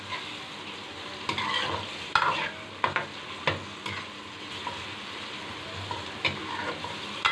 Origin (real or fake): real